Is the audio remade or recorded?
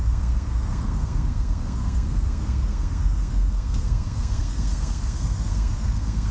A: remade